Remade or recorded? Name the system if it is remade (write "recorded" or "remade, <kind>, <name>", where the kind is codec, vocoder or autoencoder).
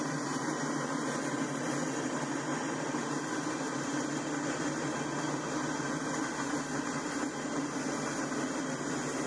recorded